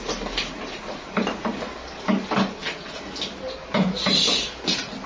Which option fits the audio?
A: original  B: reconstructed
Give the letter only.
A